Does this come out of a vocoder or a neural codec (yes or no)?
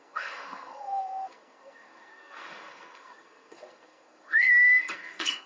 yes